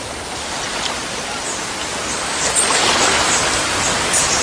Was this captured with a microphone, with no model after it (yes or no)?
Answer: yes